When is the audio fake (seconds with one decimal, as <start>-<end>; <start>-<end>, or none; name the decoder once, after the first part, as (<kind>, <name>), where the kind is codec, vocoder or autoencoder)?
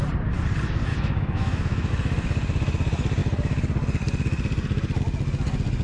0.9-1.9 (autoencoder, DAC-VAE)